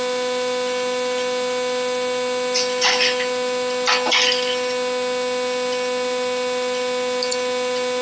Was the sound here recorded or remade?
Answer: recorded